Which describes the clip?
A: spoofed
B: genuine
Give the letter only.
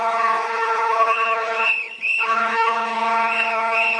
A